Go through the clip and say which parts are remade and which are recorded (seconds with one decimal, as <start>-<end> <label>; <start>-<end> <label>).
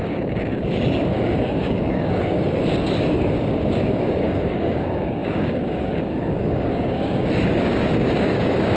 0.0-8.8 remade